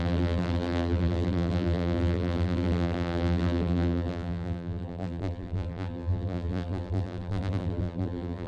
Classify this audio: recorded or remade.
remade